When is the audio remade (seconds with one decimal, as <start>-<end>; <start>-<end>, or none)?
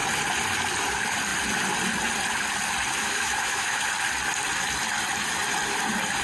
3.0-3.9